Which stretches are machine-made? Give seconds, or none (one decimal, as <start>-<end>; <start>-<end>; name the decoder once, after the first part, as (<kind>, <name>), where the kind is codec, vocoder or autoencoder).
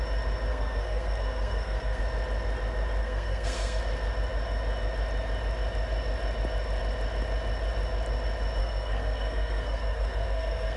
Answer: 0.5-2.0 (codec, SNAC); 3.0-3.8; 8.6-10.8